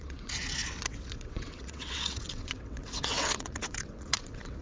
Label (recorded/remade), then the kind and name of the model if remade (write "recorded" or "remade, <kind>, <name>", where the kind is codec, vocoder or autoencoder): remade, vocoder, WaveNeXt